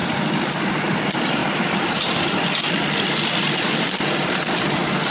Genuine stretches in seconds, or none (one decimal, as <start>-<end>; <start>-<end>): 0.0-5.1